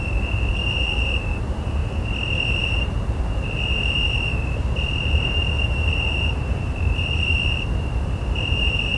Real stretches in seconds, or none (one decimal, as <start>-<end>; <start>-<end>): 1.8-2.5